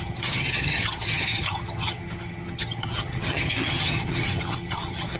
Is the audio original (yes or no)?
no